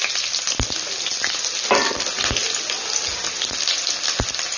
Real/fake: real